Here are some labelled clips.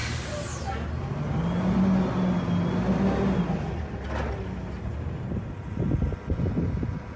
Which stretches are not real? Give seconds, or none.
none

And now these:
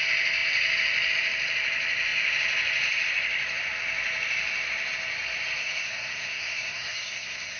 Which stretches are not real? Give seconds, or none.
5.6-7.6 (codec, SNAC)

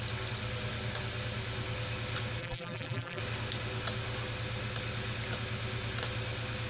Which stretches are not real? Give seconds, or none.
2.4-3.2 (vocoder, BigVGAN v2)